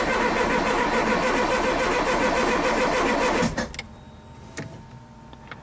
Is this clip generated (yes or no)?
no